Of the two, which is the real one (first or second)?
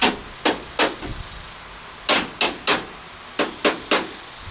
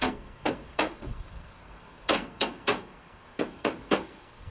first